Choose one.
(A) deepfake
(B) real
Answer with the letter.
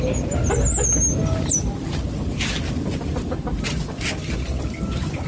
B